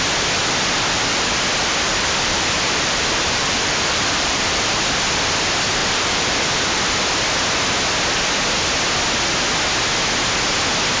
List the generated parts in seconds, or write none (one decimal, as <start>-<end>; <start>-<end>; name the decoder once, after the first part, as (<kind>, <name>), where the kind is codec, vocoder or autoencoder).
0.4-4.8 (vocoder, BigVGAN v2); 5.8-7.2